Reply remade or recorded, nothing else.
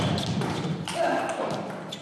recorded